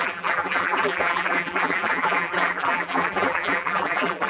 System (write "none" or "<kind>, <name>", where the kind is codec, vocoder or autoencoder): vocoder, BigVGAN v2